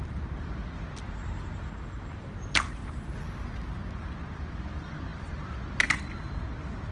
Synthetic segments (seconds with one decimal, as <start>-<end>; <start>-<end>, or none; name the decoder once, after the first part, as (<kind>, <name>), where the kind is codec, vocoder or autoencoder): none